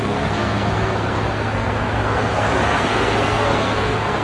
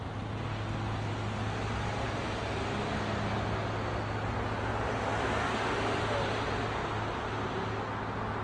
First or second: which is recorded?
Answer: second